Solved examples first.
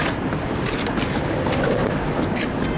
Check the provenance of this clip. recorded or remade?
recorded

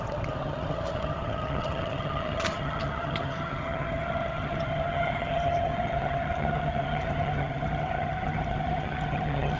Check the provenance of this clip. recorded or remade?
remade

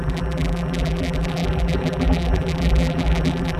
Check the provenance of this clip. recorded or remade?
remade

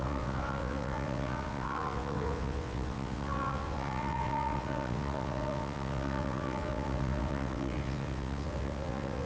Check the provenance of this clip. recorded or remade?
remade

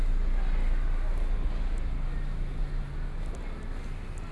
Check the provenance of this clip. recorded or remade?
recorded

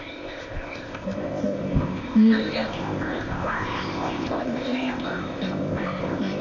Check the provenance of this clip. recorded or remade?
remade